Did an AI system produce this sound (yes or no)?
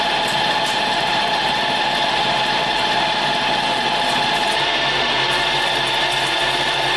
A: no